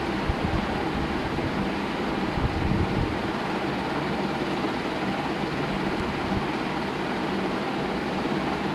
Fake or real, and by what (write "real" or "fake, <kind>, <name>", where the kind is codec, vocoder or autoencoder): real